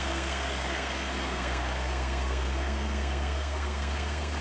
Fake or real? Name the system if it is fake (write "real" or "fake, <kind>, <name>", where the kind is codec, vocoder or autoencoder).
fake, codec, SNAC